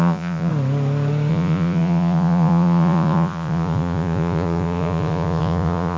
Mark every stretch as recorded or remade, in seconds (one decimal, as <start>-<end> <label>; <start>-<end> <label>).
0.0-0.5 remade; 0.5-1.3 recorded; 1.3-6.0 remade